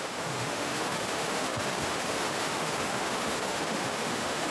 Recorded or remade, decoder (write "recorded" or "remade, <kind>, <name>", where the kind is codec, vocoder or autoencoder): remade, autoencoder, DAC-VAE